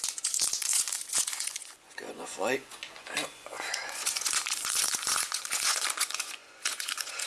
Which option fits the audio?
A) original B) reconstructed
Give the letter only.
B